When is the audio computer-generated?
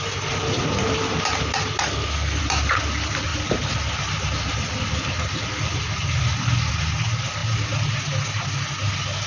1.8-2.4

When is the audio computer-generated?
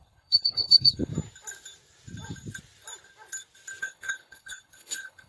0.0-1.1; 3.8-5.3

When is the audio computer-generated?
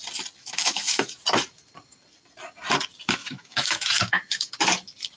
0.4-1.2; 3.2-4.5